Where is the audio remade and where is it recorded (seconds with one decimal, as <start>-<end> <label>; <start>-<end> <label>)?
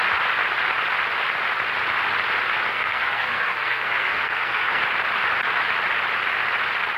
0.0-2.7 recorded; 2.7-4.8 remade; 4.8-7.0 recorded